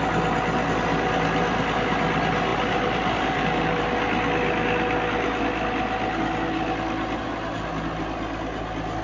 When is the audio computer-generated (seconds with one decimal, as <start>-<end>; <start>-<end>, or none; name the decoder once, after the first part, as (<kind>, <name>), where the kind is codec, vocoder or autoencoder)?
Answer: none